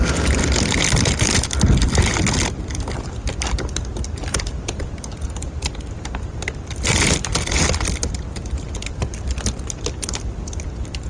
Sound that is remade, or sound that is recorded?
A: remade